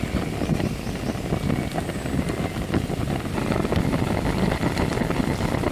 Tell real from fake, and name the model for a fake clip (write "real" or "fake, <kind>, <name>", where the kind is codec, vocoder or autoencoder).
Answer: real